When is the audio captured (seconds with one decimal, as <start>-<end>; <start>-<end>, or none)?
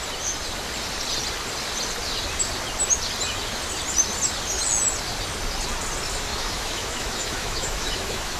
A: 0.0-6.3